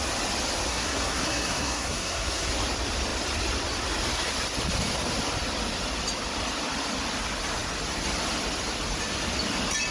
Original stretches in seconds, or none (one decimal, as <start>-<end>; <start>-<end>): 0.0-0.7; 2.5-9.9